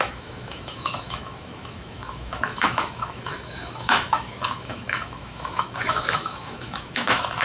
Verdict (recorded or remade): remade